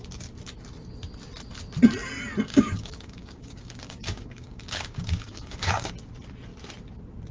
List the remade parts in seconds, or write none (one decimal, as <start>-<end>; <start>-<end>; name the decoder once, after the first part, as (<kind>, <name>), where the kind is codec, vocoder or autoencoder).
2.5-5.9 (codec, DAC)